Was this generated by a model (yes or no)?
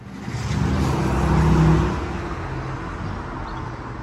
no